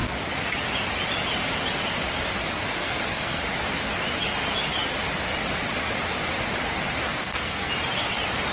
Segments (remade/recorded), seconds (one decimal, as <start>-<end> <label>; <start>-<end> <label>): 0.0-2.8 recorded; 2.8-3.4 remade; 3.4-7.1 recorded; 7.1-7.7 remade; 7.7-8.5 recorded